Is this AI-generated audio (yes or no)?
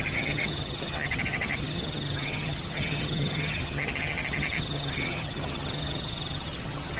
yes